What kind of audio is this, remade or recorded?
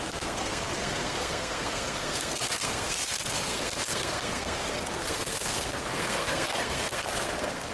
remade